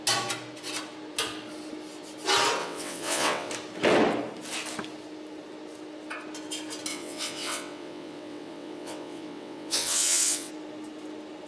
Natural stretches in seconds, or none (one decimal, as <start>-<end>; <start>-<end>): 0.0-2.6; 3.5-6.9; 10.5-11.5